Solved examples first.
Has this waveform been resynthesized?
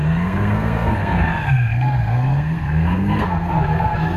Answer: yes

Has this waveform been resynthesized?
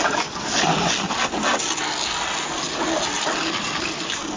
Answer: no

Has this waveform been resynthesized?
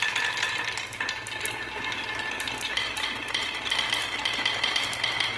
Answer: no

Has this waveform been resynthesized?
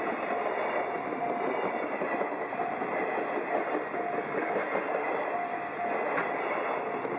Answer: no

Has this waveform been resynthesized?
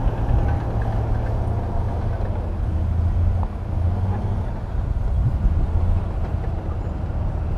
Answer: no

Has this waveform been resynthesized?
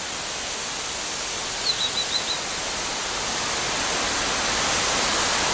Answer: no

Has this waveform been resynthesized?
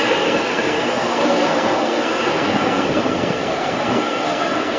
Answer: yes